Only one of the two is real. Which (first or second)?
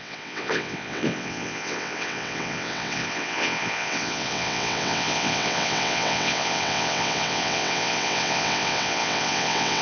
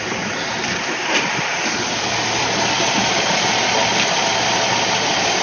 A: second